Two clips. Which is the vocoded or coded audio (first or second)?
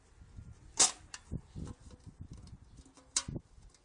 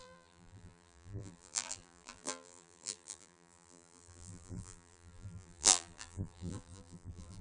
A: second